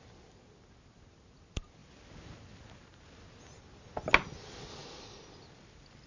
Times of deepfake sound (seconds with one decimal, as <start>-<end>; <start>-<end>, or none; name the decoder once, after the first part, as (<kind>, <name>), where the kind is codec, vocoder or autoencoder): none